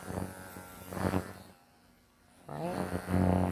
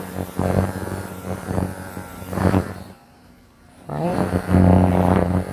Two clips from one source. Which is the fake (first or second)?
second